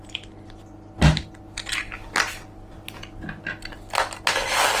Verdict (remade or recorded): recorded